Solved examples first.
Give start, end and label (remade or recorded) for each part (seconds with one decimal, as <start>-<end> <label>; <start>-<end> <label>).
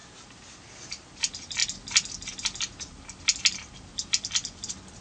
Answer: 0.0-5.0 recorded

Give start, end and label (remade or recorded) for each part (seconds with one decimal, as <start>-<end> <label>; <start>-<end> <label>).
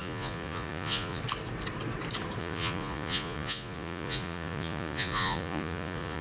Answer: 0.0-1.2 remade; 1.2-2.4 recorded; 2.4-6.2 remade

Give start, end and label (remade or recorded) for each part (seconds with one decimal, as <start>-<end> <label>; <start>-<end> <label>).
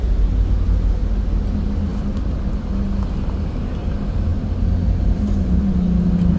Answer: 0.0-6.4 recorded